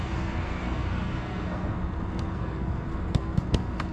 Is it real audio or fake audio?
fake